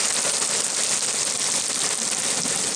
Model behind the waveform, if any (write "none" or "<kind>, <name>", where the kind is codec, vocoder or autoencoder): none